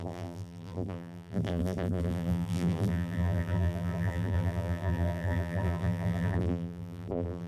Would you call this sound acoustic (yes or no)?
no